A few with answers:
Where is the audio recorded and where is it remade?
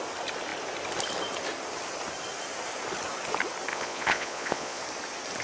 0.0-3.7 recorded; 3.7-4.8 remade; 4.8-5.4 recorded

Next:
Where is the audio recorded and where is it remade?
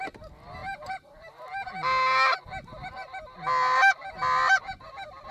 0.0-0.6 recorded; 0.6-1.5 remade; 1.5-5.3 recorded